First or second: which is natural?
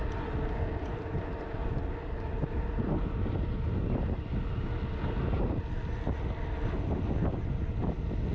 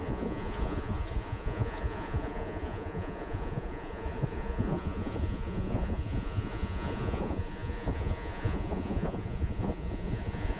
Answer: first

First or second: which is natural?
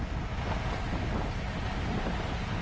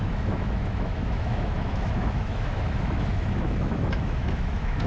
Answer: first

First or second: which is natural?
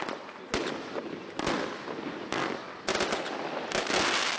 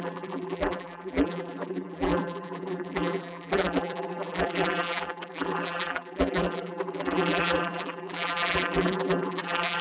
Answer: first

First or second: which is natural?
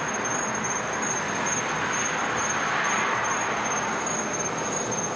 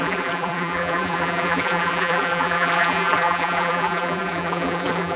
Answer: first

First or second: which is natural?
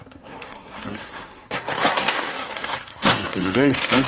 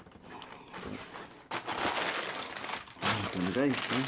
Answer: second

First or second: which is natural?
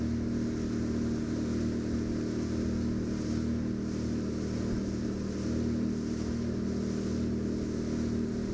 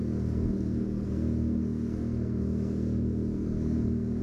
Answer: first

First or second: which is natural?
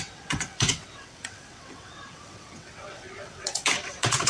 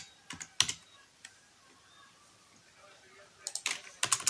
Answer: second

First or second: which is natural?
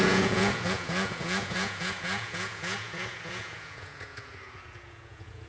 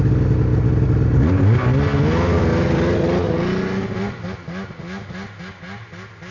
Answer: second